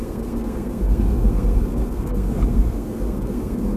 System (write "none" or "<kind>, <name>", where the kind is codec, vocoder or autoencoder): codec, SNAC